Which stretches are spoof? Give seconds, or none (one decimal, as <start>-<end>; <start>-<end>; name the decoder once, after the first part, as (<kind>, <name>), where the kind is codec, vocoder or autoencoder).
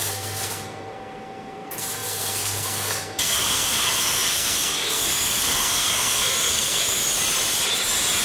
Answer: 0.0-7.0 (codec, SNAC)